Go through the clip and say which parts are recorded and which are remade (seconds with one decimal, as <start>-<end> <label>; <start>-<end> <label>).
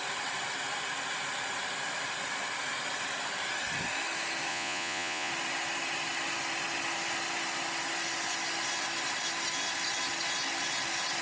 0.0-4.5 recorded; 4.5-5.3 remade; 5.3-11.2 recorded